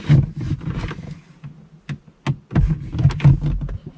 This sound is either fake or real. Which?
real